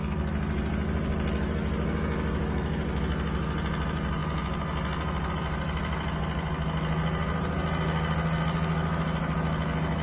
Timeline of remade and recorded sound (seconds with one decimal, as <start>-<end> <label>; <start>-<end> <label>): 0.0-10.0 recorded